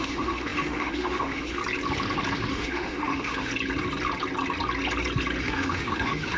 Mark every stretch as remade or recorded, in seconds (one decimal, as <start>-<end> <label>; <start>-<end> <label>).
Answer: 0.0-1.6 remade; 1.6-2.5 recorded; 2.5-3.5 remade; 3.5-5.4 recorded; 5.4-6.4 remade